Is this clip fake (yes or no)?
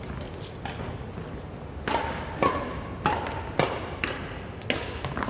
no